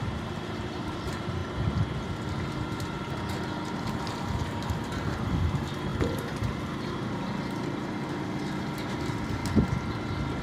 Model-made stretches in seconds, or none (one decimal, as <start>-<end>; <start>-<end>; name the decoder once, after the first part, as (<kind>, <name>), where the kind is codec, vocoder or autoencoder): 0.0-1.4 (vocoder, BigVGAN v2); 3.8-5.9; 6.8-9.4